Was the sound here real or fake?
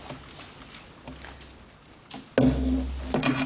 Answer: real